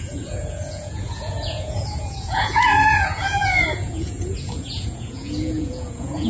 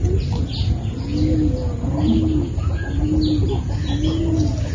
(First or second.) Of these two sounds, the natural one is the second